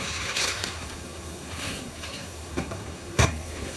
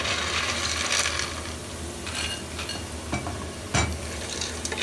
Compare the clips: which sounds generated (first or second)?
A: first